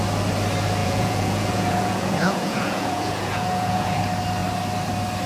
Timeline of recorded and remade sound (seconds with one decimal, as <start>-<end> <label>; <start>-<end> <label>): 0.0-0.8 recorded; 0.8-4.0 remade; 4.0-5.3 recorded